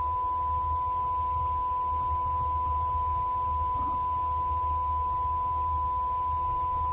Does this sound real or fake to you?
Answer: real